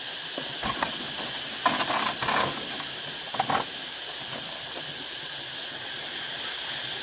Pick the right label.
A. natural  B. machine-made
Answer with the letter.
A